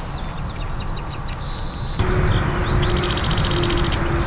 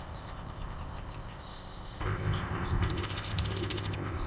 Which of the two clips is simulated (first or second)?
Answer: second